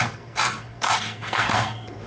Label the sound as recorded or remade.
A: remade